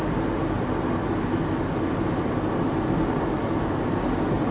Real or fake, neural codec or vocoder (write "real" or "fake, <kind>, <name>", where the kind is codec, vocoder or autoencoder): real